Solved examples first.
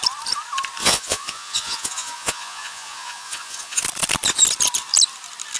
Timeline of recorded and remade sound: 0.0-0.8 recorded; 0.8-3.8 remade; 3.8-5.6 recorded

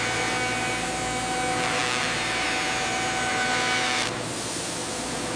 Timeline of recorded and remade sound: 0.0-5.4 recorded

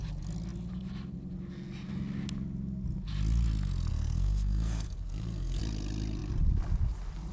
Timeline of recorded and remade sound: 0.0-3.9 recorded; 3.9-5.6 remade; 5.6-7.3 recorded